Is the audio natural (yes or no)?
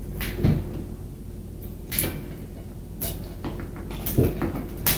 yes